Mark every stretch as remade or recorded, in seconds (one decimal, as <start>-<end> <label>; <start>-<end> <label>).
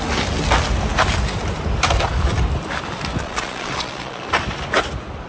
0.0-3.2 recorded; 3.2-4.3 remade; 4.3-5.3 recorded